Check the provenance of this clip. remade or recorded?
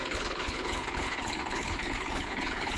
remade